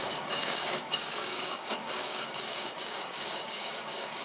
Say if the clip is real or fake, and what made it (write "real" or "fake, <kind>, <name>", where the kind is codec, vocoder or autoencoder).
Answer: fake, codec, DAC